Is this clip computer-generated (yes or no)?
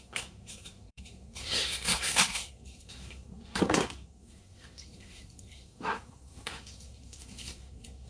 yes